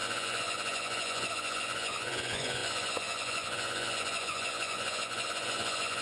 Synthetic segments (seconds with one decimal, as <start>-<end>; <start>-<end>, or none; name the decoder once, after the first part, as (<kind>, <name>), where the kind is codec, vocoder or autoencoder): 0.0-6.0 (vocoder, Vocos)